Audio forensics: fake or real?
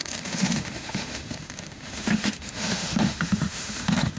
fake